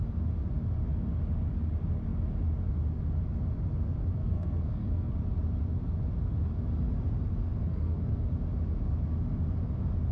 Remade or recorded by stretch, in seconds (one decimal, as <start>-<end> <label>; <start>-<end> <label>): 0.0-4.2 recorded; 4.2-5.1 remade; 5.1-7.7 recorded; 7.7-8.3 remade; 8.3-10.1 recorded